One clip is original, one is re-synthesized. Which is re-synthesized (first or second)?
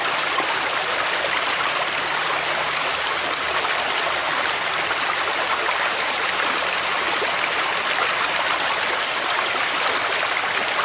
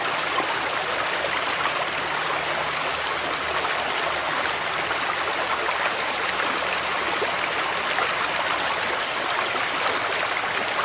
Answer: first